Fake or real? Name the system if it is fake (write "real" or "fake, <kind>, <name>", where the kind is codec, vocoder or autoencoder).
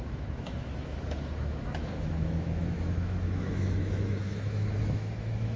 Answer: fake, autoencoder, DAC-VAE